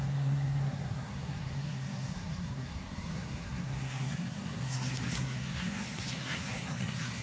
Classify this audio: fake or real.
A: fake